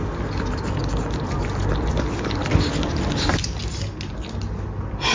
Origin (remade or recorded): recorded